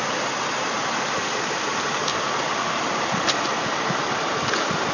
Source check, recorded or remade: recorded